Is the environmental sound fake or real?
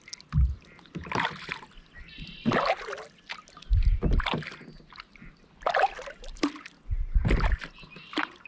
real